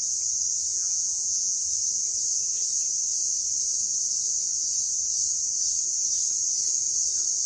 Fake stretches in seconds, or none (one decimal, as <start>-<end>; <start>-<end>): 0.7-1.6

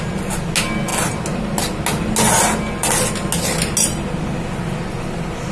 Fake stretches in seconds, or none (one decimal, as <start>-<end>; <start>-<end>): none

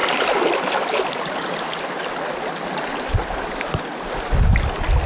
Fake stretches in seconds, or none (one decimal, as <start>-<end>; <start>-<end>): none

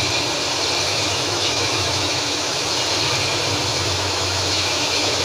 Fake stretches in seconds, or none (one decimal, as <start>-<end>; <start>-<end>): 0.9-2.7; 3.7-5.2

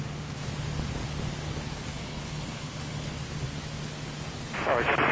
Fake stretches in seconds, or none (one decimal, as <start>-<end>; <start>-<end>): 1.9-3.1

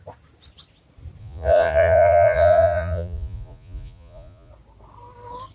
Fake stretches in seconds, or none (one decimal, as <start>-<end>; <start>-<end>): 1.2-4.5